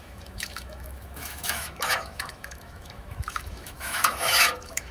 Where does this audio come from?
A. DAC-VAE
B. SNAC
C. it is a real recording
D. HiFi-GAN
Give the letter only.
A